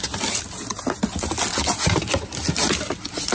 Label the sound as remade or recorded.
recorded